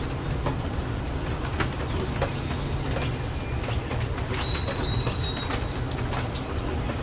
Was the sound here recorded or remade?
recorded